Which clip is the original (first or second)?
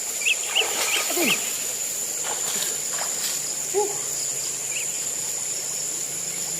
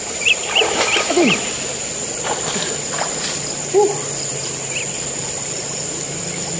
first